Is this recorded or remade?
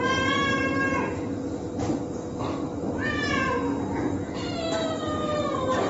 recorded